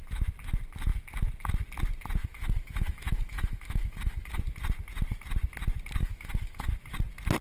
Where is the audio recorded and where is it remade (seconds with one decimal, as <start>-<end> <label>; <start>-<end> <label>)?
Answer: 0.0-2.2 recorded; 2.2-4.4 remade; 4.4-6.0 recorded; 6.0-6.7 remade; 6.7-7.4 recorded